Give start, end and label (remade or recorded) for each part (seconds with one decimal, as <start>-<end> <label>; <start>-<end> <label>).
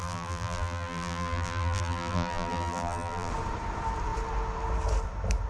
0.0-3.3 remade; 3.3-5.5 recorded